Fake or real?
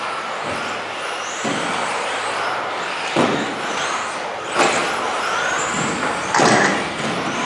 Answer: real